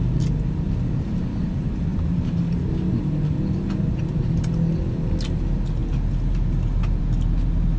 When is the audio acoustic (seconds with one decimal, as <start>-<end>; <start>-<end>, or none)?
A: 0.0-1.9; 2.5-7.8